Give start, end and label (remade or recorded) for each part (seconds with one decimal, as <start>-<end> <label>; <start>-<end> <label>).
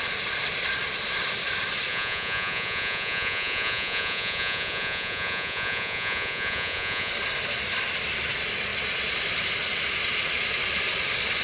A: 0.0-1.9 recorded; 1.9-7.1 remade; 7.1-11.4 recorded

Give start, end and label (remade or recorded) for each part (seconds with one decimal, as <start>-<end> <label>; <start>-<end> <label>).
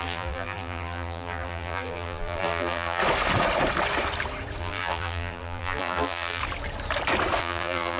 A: 0.0-3.0 remade; 3.0-4.6 recorded; 4.6-6.4 remade; 6.4-7.4 recorded; 7.4-8.0 remade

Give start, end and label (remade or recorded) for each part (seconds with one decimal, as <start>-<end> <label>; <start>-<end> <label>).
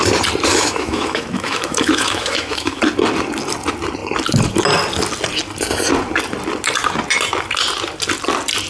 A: 0.0-0.5 recorded; 0.5-2.8 remade; 2.8-8.7 recorded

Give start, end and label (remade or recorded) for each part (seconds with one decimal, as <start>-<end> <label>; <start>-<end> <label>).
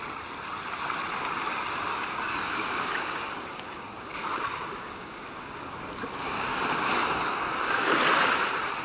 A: 0.0-1.9 recorded; 1.9-6.6 remade; 6.6-7.0 recorded; 7.0-8.0 remade; 8.0-8.8 recorded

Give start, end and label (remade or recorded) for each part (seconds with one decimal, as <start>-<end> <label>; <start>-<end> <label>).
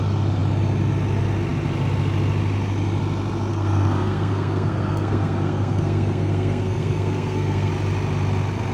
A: 0.0-3.5 recorded; 3.5-7.7 remade; 7.7-8.7 recorded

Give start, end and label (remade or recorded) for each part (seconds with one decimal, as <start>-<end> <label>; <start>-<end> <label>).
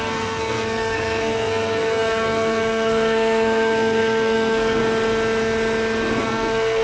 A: 0.0-4.8 remade; 4.8-6.2 recorded; 6.2-6.8 remade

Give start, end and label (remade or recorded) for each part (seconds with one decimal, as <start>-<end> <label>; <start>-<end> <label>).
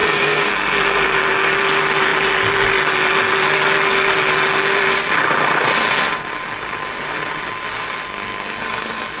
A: 0.0-0.5 remade; 0.5-9.2 recorded